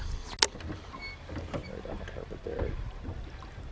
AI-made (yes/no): no